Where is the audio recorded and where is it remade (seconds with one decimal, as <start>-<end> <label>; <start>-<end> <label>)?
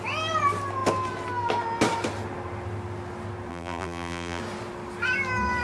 0.0-3.5 recorded; 3.5-4.4 remade; 4.4-5.6 recorded